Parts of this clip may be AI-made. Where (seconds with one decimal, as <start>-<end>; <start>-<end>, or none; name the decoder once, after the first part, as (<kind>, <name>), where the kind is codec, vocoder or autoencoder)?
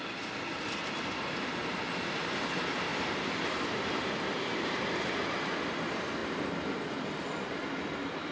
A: 1.6-2.5 (vocoder, BigVGAN v2); 2.9-5.5